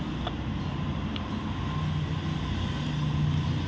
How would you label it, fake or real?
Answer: real